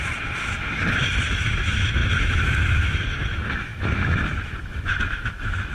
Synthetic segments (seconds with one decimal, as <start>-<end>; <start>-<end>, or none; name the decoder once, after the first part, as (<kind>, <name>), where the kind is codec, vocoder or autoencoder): 0.0-0.8 (autoencoder, DAC-VAE); 1.3-5.7